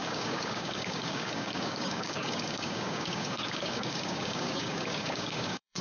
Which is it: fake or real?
fake